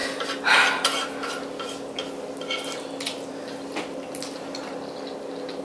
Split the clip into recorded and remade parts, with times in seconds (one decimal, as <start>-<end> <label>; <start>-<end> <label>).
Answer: 0.0-5.6 recorded